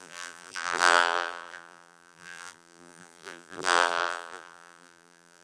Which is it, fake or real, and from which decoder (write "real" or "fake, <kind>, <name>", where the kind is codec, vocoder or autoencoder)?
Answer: fake, vocoder, BigVGAN v2